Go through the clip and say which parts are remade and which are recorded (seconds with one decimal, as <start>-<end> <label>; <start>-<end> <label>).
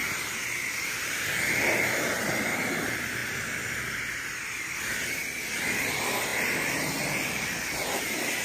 0.0-1.8 remade; 1.8-6.3 recorded; 6.3-8.0 remade; 8.0-8.4 recorded